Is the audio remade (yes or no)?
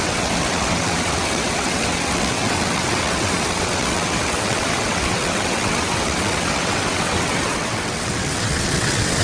yes